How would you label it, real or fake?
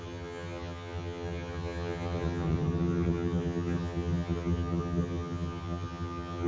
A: fake